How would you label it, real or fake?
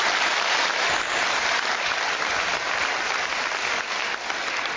fake